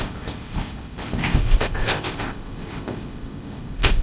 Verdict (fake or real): fake